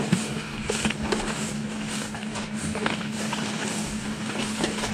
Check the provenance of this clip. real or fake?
fake